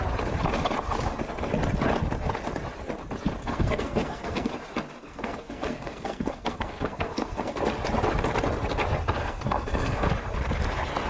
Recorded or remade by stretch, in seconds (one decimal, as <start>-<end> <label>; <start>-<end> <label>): 0.0-3.4 recorded; 3.4-4.5 remade; 4.5-5.0 recorded; 5.0-7.6 remade; 7.6-9.2 recorded; 9.2-10.1 remade; 10.1-11.1 recorded